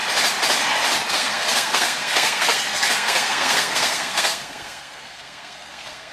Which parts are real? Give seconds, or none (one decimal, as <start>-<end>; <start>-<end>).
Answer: 0.0-1.1